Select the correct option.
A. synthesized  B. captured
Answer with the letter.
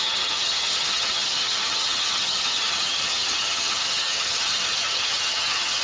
A